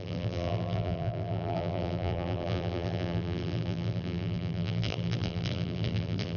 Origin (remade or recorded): remade